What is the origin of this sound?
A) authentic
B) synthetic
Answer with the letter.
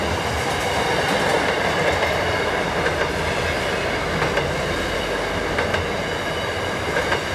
A